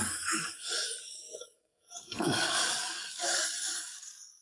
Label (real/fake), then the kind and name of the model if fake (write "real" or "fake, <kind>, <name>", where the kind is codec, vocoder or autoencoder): fake, codec, DAC